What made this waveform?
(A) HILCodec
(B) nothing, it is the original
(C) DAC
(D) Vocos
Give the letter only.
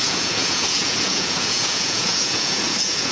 D